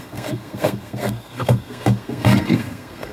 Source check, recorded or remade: remade